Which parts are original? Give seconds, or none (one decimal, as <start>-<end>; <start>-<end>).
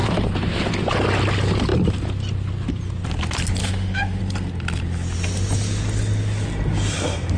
0.0-3.6; 4.2-7.4